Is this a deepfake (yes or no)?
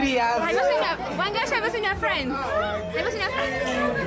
no